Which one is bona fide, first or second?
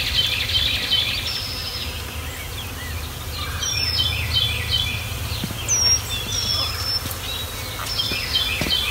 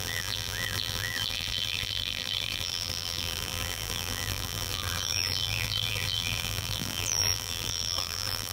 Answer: first